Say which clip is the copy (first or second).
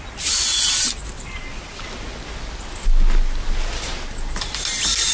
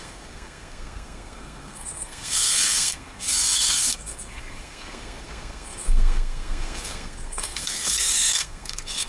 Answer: second